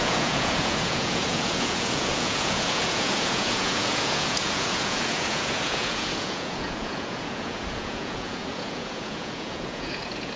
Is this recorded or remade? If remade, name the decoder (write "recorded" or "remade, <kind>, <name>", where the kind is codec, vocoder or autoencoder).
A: remade, vocoder, Vocos